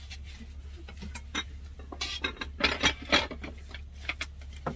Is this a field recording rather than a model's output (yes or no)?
yes